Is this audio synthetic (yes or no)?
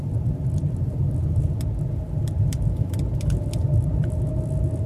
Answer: no